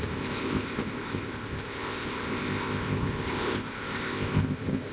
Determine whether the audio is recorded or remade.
remade